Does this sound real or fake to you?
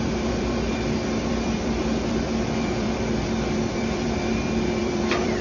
fake